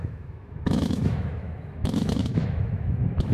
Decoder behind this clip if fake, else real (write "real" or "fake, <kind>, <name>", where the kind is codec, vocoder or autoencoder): fake, autoencoder, DAC-VAE